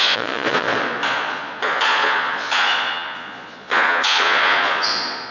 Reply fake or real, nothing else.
fake